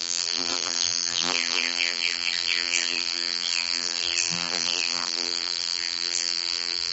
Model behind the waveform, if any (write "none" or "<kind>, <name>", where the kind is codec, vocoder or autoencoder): vocoder, BigVGAN v2